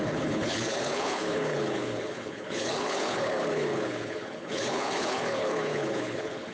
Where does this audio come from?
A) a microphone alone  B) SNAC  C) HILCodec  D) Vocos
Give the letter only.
C